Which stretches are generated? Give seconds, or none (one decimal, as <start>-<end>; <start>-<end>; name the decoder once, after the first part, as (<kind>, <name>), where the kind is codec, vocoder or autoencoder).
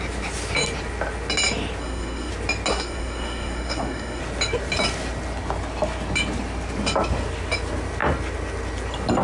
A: 1.8-2.3 (codec, SNAC); 2.7-4.2